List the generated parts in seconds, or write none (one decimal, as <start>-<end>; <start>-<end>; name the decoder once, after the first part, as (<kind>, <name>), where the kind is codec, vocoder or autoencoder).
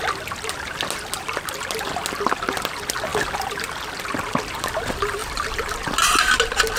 none